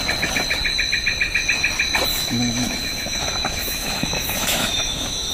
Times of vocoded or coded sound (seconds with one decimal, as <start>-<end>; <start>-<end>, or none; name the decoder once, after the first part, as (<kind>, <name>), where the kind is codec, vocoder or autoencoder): 2.1-5.3 (autoencoder, DAC-VAE)